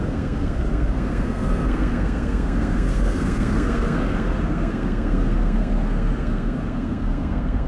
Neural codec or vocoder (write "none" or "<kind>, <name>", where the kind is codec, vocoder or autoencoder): codec, SNAC